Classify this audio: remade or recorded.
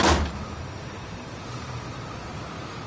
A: remade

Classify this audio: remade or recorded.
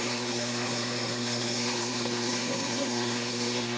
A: remade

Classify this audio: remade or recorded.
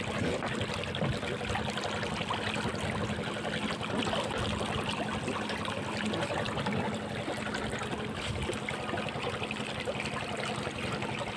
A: recorded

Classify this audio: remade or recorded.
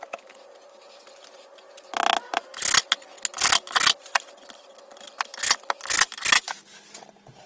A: recorded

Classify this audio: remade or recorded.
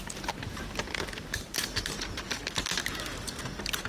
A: recorded